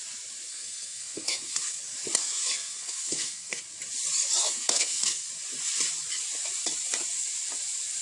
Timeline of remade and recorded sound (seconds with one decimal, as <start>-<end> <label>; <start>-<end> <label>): 0.0-0.5 recorded; 0.5-1.8 remade; 1.8-2.2 recorded; 2.2-3.6 remade; 3.6-4.4 recorded; 4.4-5.3 remade; 5.3-8.0 recorded